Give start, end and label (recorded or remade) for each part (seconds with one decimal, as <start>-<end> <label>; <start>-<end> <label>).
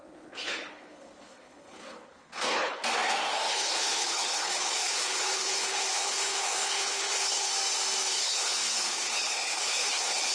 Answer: 0.0-2.8 remade; 2.8-3.5 recorded; 3.5-7.5 remade; 7.5-8.1 recorded; 8.1-10.3 remade